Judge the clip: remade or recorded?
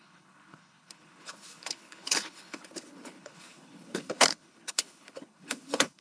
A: remade